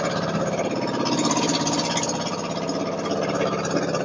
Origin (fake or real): real